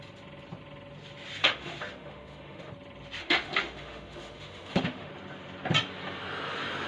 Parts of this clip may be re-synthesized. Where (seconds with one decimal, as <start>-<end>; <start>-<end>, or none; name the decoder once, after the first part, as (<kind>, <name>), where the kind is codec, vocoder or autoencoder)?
1.4-2.7 (autoencoder, DAC-VAE); 3.2-5.1